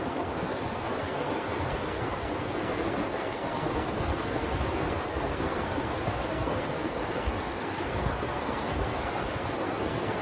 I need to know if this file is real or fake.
fake